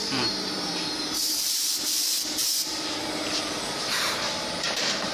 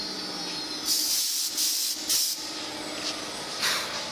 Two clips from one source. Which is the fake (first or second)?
first